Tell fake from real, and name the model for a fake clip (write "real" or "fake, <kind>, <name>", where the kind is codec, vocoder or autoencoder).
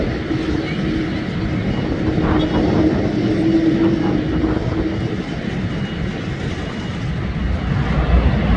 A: real